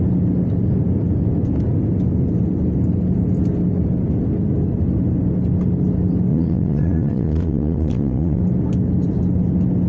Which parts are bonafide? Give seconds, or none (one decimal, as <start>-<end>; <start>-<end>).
0.0-6.3; 8.4-9.9